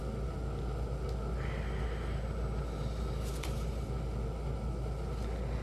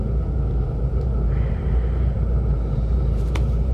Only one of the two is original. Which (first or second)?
first